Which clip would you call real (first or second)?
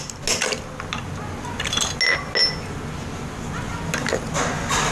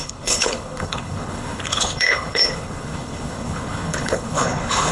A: first